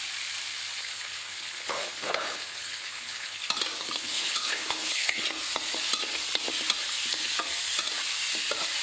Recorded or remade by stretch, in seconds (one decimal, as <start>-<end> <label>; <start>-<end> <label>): 0.0-0.8 recorded; 0.8-3.5 remade; 3.5-4.0 recorded; 4.0-5.2 remade; 5.2-8.8 recorded